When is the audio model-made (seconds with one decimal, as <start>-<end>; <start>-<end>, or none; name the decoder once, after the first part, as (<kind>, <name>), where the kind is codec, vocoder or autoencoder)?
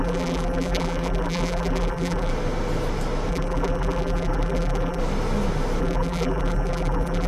0.0-2.3 (vocoder, BigVGAN v2); 3.3-5.0; 5.8-7.3